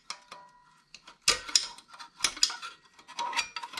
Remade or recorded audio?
recorded